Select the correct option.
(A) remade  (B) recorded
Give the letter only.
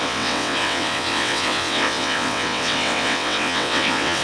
A